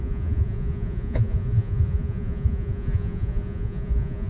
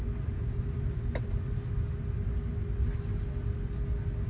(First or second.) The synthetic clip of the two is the first